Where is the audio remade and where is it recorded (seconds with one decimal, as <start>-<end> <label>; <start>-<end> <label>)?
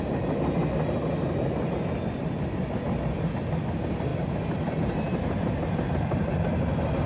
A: 0.0-4.1 recorded; 4.1-7.1 remade